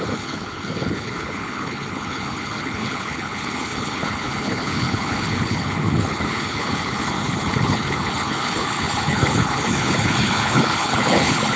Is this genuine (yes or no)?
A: no